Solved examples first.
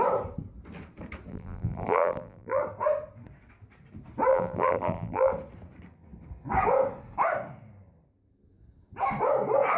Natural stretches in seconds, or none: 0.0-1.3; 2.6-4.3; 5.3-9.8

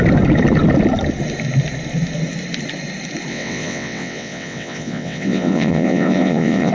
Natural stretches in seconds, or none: 0.0-3.3

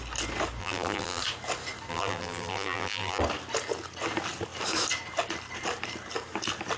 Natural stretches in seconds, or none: 0.0-0.6; 1.2-1.9; 3.2-6.8

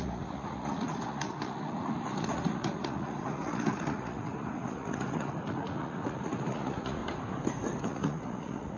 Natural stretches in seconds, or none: 7.0-7.8

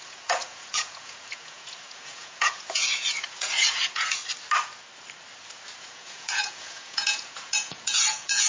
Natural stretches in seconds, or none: 4.2-5.8

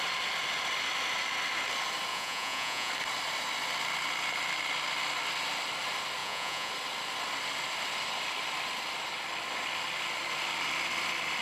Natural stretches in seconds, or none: 0.0-2.1; 2.9-6.2; 6.7-11.4

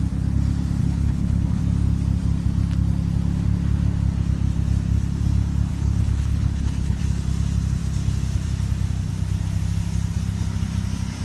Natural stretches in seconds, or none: 0.0-0.8; 1.6-5.7; 7.0-11.2